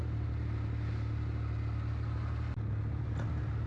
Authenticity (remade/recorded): recorded